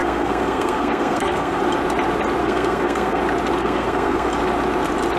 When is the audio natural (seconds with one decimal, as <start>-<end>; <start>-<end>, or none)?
1.6-2.4; 3.2-3.6; 4.3-5.2